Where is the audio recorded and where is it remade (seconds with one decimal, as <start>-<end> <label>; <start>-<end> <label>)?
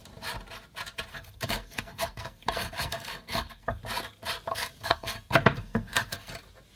0.0-1.1 recorded; 1.1-3.8 remade; 3.8-4.5 recorded; 4.5-6.3 remade; 6.3-6.8 recorded